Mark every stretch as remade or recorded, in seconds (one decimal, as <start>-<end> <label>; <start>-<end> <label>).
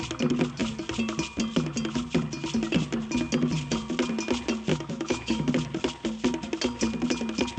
0.0-4.7 recorded; 4.7-5.5 remade; 5.5-7.6 recorded